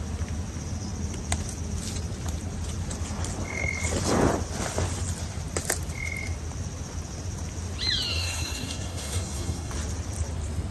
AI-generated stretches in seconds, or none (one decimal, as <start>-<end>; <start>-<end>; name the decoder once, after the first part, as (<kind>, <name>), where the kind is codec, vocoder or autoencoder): 8.1-9.7 (codec, SNAC)